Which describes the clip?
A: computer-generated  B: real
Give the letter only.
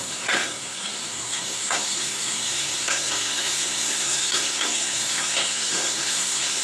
A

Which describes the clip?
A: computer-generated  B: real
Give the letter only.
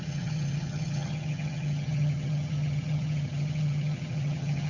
A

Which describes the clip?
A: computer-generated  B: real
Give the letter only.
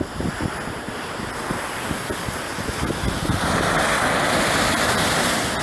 B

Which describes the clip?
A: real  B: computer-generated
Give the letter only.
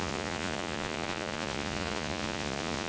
B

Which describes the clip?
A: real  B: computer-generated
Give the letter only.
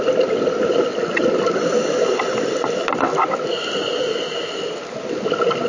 A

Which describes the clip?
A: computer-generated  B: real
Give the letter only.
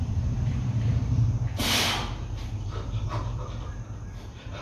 A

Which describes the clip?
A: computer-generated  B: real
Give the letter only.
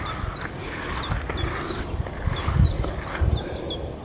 A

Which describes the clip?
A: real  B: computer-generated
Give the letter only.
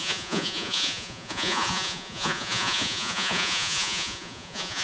B